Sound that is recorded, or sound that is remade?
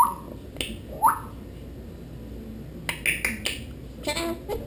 recorded